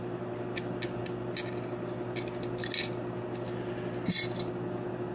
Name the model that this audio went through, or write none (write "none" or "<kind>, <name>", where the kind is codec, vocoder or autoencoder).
none